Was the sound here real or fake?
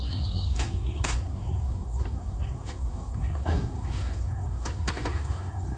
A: fake